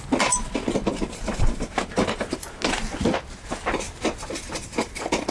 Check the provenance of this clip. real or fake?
real